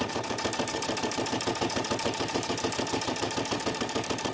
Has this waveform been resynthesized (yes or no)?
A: yes